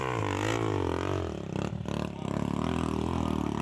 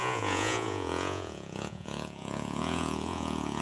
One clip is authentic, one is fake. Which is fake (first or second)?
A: second